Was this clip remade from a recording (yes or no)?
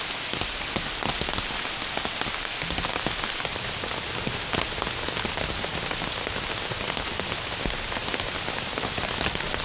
no